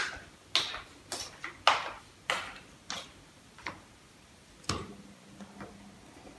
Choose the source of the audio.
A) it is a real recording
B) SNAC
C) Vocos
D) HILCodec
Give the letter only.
A